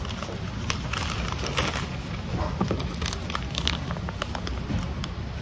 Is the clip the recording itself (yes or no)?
yes